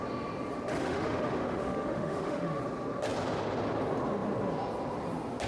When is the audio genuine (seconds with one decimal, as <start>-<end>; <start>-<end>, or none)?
0.0-0.8; 2.6-5.5